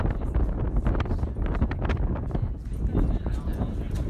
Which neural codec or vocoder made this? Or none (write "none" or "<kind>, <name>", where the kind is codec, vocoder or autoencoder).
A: none